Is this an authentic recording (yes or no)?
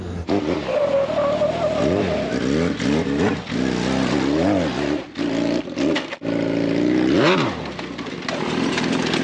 yes